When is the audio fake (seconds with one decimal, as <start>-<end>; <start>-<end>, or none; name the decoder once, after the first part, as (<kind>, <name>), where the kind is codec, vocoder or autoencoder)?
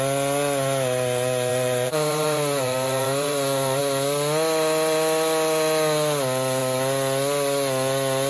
1.5-3.8 (vocoder, BigVGAN v2)